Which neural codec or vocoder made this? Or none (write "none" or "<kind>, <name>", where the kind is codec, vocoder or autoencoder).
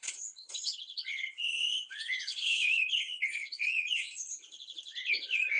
codec, HILCodec